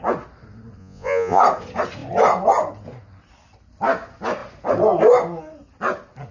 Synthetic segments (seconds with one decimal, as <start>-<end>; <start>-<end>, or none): 0.8-1.4